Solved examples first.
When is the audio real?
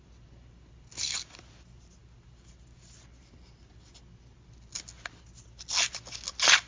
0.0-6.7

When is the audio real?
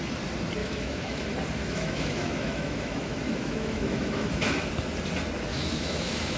0.0-0.6; 1.2-1.6; 4.7-5.5